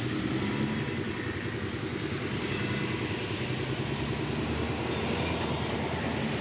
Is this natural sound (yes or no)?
yes